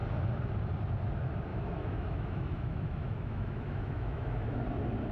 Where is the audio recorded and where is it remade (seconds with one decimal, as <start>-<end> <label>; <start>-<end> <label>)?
0.0-1.5 recorded; 1.5-4.6 remade; 4.6-5.1 recorded